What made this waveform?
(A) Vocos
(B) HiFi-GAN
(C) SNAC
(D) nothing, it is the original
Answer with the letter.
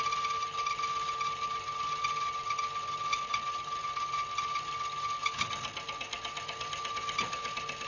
D